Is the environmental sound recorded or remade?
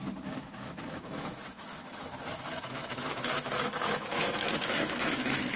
remade